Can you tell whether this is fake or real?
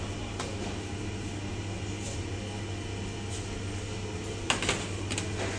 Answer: real